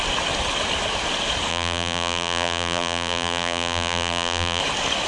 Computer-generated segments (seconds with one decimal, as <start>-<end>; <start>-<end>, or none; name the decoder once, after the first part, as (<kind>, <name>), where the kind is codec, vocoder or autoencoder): 1.5-4.6 (vocoder, BigVGAN v2)